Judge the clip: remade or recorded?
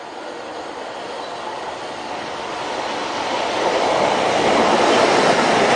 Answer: recorded